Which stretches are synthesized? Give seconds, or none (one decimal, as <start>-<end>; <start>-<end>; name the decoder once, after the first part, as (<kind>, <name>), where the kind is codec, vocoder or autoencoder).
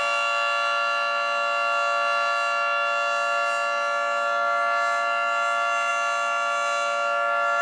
none